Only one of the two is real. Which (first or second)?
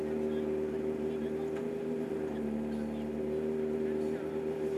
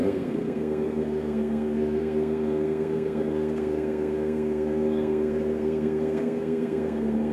first